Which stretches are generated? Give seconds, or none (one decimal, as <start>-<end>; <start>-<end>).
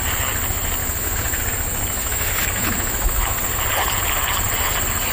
0.8-1.4; 2.0-3.4